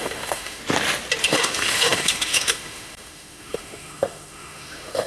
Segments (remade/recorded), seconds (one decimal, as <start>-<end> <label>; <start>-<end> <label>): 0.0-0.6 remade; 0.6-1.2 recorded; 1.2-5.1 remade